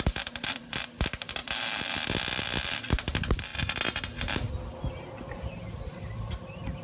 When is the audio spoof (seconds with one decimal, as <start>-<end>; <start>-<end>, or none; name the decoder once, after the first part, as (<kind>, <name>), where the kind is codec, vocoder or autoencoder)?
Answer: 0.0-3.5 (vocoder, BigVGAN v2); 6.0-6.8